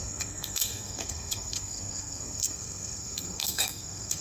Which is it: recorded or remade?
remade